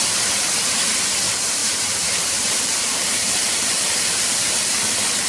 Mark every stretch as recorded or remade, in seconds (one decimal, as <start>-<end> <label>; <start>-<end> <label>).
0.0-1.6 recorded; 1.6-4.8 remade; 4.8-5.3 recorded